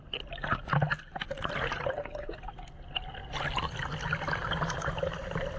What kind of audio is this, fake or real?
real